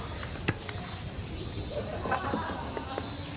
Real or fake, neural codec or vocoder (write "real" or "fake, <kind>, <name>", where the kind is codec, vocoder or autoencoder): real